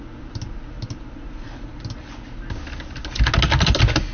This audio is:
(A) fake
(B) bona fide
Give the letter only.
B